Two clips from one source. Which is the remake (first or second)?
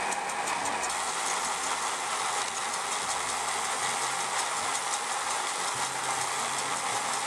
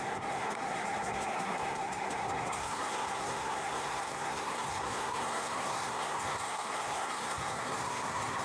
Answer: second